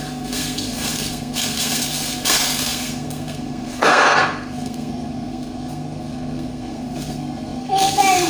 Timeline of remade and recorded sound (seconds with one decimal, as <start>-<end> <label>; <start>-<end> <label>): 0.0-8.3 remade